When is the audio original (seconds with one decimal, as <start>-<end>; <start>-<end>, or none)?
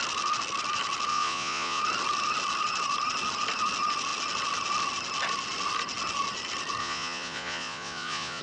0.0-1.1; 1.8-6.8